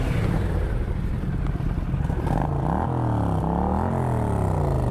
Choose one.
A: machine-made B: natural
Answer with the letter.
B